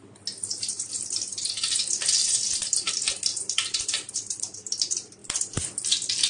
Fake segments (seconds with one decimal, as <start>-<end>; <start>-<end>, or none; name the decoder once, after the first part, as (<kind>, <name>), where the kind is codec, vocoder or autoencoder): 0.5-1.8 (vocoder, BigVGAN v2); 2.2-2.9; 3.3-4.8